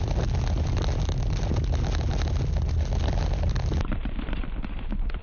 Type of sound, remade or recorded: recorded